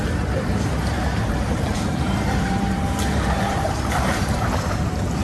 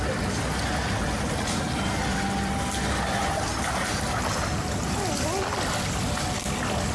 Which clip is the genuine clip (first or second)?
second